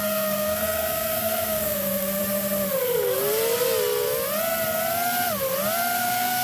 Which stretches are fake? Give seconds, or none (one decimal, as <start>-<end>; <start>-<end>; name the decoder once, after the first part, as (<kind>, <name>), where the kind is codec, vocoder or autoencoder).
0.0-2.2 (codec, SNAC); 6.0-6.4